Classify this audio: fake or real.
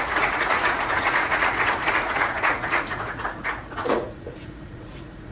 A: fake